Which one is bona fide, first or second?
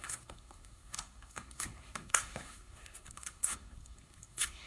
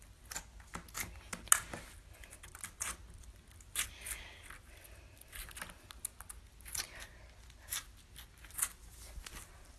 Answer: second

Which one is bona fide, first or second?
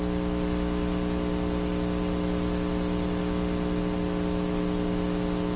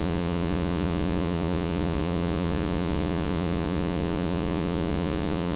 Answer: first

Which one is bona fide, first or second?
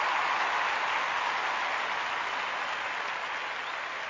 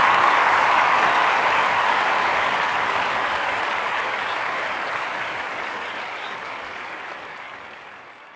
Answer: first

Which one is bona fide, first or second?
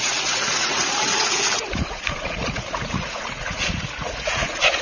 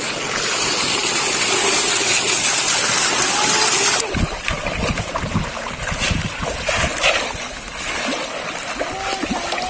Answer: second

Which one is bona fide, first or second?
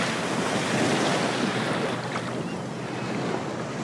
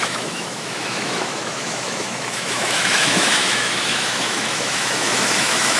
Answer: first